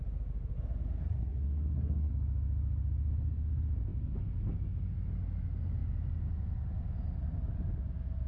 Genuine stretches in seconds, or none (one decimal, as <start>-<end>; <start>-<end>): 0.0-1.0; 2.1-8.3